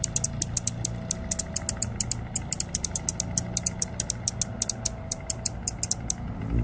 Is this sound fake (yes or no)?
no